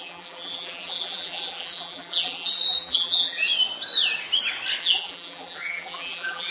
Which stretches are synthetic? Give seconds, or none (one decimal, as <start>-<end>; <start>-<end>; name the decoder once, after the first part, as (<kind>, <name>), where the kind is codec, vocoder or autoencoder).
0.0-3.5 (vocoder, BigVGAN v2); 4.8-6.5